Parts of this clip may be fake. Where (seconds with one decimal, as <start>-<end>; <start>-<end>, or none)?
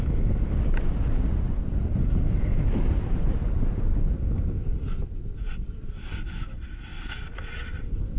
none